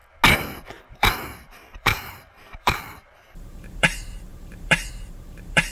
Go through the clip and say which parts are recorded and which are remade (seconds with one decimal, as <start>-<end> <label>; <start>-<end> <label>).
0.0-0.6 recorded; 0.6-5.7 remade